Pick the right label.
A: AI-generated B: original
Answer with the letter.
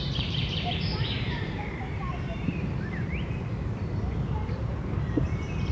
A